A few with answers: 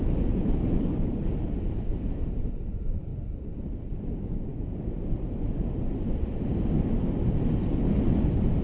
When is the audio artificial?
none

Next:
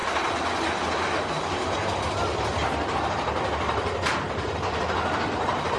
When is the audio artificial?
none

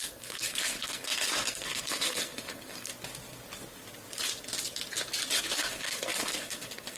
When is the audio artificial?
0.0-2.9 (codec, SNAC); 5.4-7.0

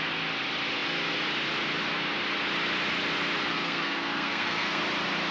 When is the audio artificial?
3.5-4.8 (codec, SNAC)

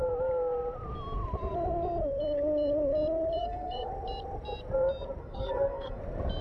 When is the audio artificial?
3.4-3.9 (codec, SNAC); 5.2-6.0

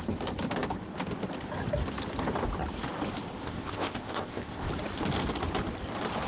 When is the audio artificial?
3.4-4.7 (codec, ZipCodec)